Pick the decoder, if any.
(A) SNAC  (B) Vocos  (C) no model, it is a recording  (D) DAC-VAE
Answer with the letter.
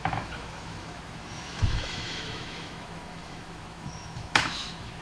D